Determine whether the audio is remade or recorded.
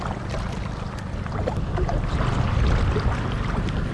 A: recorded